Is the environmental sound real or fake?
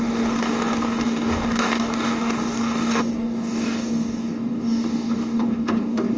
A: fake